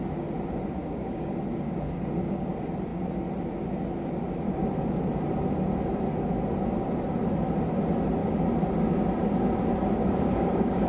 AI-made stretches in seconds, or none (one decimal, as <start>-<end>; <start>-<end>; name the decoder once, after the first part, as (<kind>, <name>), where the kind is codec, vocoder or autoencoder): 0.8-2.5 (codec, DAC); 10.0-10.9